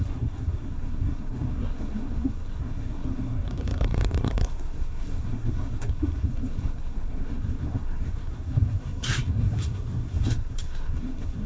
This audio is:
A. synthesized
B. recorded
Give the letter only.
A